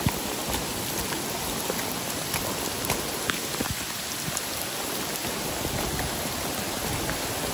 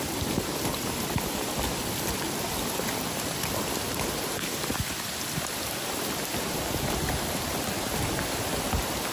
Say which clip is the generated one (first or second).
second